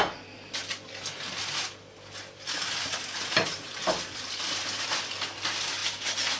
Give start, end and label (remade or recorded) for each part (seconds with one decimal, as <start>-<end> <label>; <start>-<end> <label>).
0.0-6.4 recorded